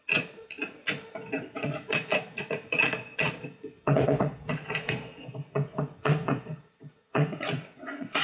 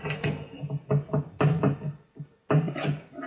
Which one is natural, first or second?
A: second